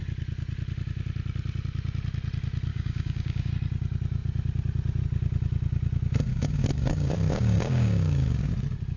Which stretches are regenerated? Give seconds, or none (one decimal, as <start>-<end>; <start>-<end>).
2.7-3.5; 6.3-8.5